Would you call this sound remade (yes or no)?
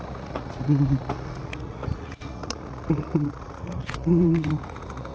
yes